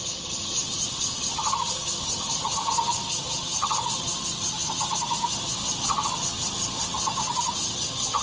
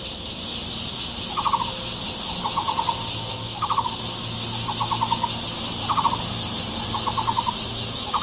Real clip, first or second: second